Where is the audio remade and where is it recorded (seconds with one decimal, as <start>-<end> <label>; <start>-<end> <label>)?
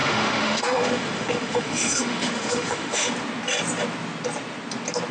0.0-3.1 remade; 3.1-5.1 recorded